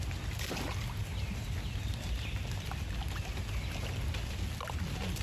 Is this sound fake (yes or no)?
no